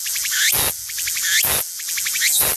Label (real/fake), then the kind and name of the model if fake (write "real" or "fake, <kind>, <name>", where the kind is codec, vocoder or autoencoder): real